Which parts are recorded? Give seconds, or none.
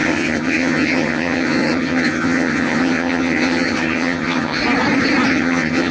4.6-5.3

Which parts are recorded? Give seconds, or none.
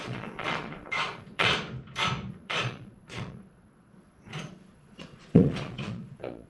1.5-2.3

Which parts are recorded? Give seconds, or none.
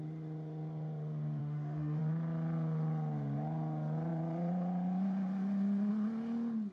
0.0-1.4; 2.0-6.7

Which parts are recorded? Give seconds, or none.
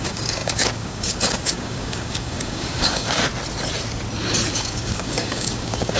3.2-4.5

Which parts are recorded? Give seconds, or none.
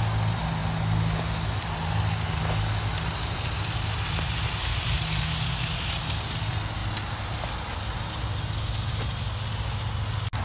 0.0-10.4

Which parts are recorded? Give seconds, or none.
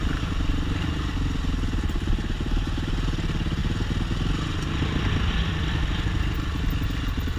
1.1-7.4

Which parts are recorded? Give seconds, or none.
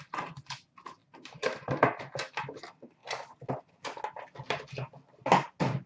0.0-5.9